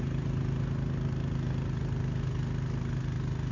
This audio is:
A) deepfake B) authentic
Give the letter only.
B